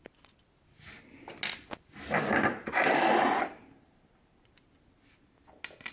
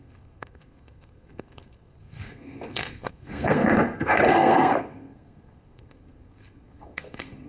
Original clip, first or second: first